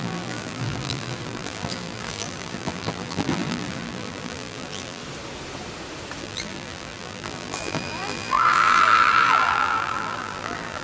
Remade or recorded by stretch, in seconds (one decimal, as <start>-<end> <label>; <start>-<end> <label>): 0.0-5.0 remade; 5.0-6.2 recorded; 6.2-10.8 remade